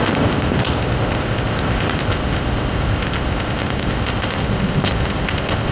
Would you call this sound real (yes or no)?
no